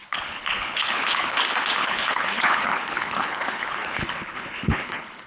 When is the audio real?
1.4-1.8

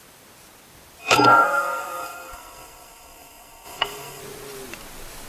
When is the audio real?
0.0-1.0; 4.2-5.3

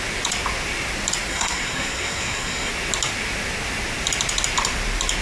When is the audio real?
0.0-1.3; 2.7-5.2

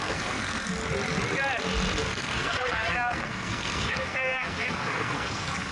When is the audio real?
0.8-2.0

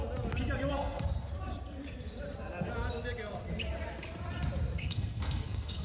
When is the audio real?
0.0-0.7; 1.3-4.8

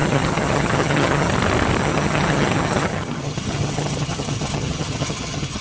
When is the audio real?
1.3-1.8